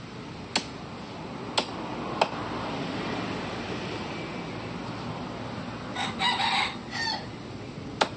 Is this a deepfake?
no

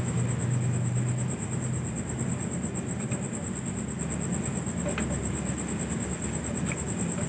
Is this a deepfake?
no